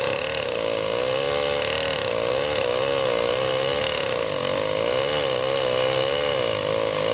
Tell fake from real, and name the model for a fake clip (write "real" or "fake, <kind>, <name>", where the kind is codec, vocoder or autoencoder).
real